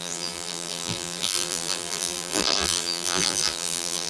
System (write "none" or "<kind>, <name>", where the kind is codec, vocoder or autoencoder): vocoder, BigVGAN v2